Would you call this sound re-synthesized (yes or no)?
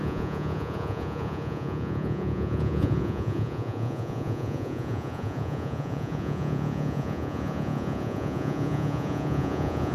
yes